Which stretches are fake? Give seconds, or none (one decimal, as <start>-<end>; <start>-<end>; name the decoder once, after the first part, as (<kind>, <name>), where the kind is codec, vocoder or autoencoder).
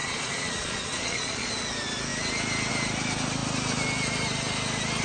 0.0-1.5 (vocoder, Vocos)